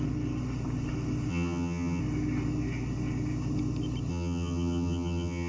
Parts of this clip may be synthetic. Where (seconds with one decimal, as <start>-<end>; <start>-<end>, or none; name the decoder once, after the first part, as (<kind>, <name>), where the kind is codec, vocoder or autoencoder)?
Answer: 1.3-2.0 (vocoder, HiFi-GAN); 4.1-5.5